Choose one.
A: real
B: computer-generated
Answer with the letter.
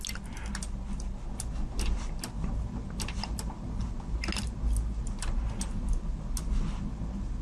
A